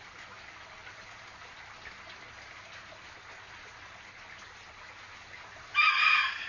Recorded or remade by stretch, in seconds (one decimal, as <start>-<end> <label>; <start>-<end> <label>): 0.0-6.5 recorded